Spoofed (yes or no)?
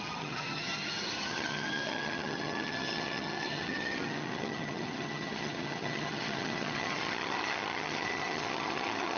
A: yes